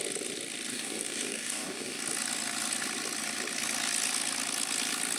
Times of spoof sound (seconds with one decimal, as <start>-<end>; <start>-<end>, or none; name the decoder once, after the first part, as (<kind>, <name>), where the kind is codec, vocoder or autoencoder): 0.7-2.0 (codec, DAC)